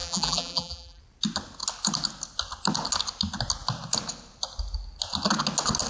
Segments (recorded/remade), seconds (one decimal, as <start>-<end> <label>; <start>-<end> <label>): 0.0-1.0 remade; 1.0-5.9 recorded